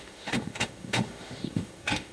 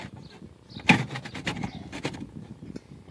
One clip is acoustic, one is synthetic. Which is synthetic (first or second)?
first